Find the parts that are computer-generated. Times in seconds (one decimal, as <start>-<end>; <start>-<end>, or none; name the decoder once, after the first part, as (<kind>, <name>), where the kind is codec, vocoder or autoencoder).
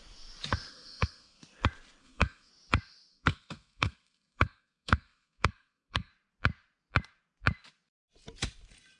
0.7-1.4 (codec, SNAC); 2.0-2.5; 3.1-6.1